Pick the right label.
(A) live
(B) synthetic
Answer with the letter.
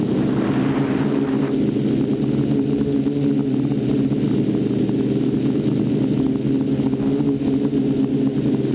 A